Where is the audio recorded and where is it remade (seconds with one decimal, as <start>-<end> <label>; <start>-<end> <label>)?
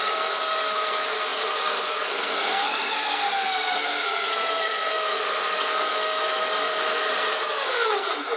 0.0-8.4 remade